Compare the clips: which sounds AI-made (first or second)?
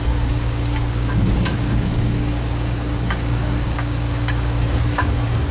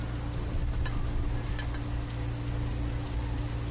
first